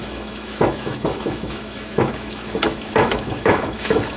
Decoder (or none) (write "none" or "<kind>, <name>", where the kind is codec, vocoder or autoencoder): autoencoder, DAC-VAE